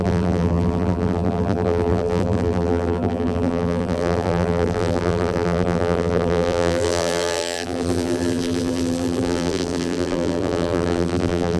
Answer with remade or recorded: remade